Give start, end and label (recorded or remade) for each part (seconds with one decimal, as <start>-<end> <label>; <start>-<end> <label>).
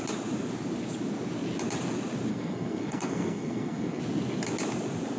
0.0-2.3 recorded; 2.3-4.0 remade; 4.0-5.2 recorded